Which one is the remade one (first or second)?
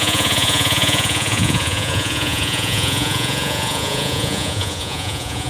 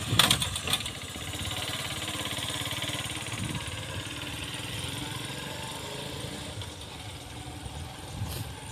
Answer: first